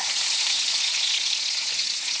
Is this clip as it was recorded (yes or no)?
no